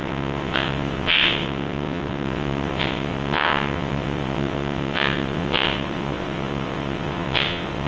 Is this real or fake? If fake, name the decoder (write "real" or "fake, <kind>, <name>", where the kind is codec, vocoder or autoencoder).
fake, vocoder, WaveNeXt